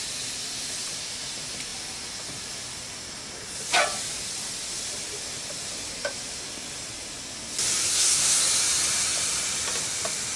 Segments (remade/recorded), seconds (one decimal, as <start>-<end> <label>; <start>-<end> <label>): 0.0-7.9 recorded; 7.9-8.4 remade; 8.4-10.4 recorded